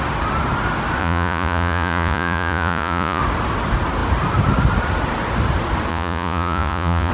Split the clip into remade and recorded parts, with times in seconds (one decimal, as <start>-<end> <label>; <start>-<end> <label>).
0.0-1.0 recorded; 1.0-3.2 remade; 3.2-5.9 recorded; 5.9-7.1 remade

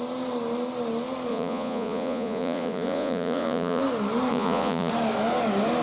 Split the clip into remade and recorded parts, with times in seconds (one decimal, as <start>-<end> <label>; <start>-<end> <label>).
0.0-1.3 recorded; 1.3-3.8 remade; 3.8-4.3 recorded; 4.3-4.9 remade; 4.9-5.8 recorded